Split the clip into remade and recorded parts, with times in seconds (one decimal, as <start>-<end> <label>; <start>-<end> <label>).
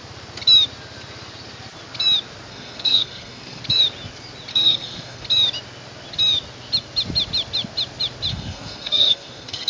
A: 0.0-2.5 recorded; 2.5-3.6 remade; 3.6-4.5 recorded; 4.5-5.2 remade; 5.2-8.3 recorded; 8.3-9.7 remade